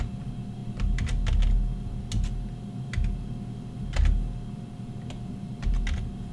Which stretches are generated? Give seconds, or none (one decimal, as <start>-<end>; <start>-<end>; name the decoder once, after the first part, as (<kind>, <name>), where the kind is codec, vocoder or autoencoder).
none